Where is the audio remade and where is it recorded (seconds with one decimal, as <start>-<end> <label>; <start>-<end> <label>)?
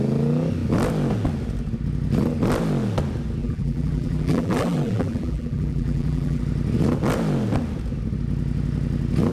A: 0.0-3.4 recorded; 3.4-6.4 remade; 6.4-9.3 recorded